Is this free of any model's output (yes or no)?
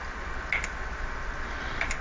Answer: yes